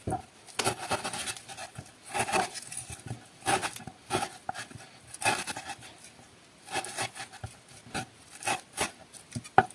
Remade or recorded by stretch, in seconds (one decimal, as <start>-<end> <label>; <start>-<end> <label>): 0.0-9.7 recorded